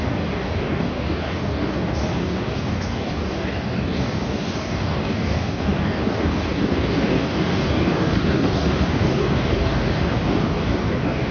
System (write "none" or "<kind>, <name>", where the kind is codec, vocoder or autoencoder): codec, DAC